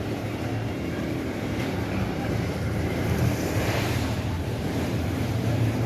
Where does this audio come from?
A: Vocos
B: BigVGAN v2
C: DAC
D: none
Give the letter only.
B